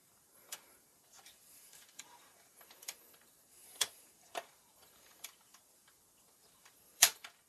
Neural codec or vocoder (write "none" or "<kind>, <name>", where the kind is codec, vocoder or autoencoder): vocoder, BigVGAN v2